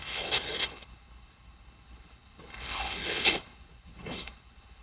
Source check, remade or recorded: remade